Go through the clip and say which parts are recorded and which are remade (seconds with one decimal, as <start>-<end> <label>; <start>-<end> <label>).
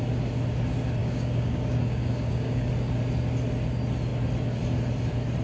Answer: 0.0-1.0 recorded; 1.0-2.7 remade; 2.7-5.4 recorded